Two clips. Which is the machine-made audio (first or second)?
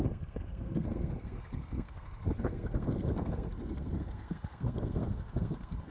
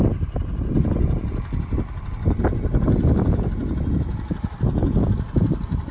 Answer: first